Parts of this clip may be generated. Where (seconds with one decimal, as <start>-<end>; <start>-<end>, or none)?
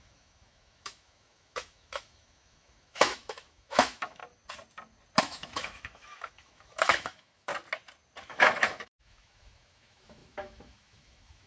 0.0-4.2; 5.2-7.5; 8.2-11.5